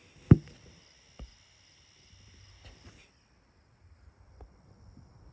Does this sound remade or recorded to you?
recorded